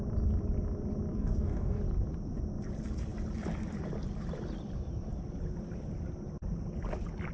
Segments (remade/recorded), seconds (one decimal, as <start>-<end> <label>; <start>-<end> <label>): 0.0-1.1 recorded; 1.1-1.8 remade; 1.8-7.3 recorded